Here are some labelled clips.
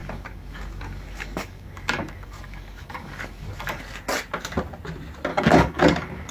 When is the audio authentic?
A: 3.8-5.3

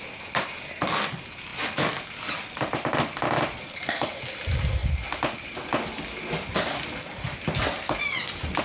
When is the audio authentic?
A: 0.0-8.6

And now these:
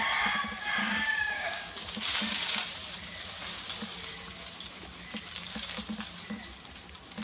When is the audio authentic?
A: 0.0-0.8; 1.7-7.2

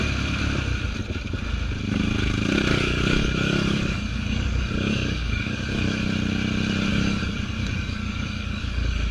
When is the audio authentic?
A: 0.0-2.7; 6.0-6.9

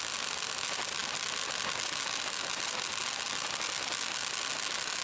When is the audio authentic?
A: 0.0-5.0

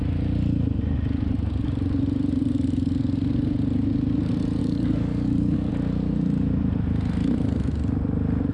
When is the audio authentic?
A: 0.0-4.6; 5.7-8.5

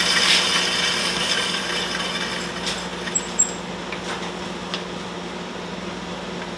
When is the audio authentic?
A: 0.0-1.0; 1.6-6.6